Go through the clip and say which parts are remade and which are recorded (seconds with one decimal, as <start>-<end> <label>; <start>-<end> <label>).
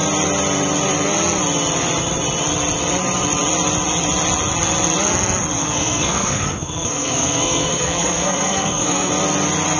0.0-5.6 recorded; 5.6-9.1 remade; 9.1-9.8 recorded